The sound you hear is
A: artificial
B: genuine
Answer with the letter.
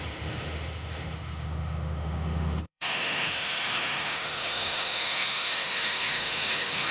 A